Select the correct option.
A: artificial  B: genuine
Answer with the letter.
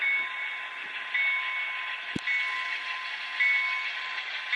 B